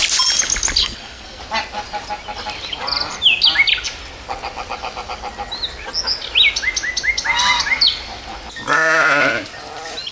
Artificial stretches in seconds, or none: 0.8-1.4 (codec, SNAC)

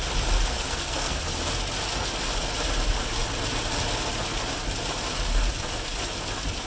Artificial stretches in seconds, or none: 0.5-1.2 (codec, SNAC)

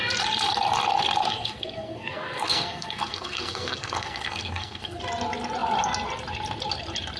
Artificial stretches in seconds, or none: 1.2-5.0 (codec, SNAC)

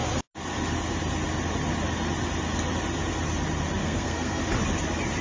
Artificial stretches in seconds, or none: 3.8-4.4 (codec, SNAC)

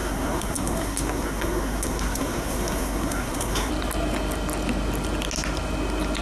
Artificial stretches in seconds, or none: 0.0-3.7 (codec, SNAC)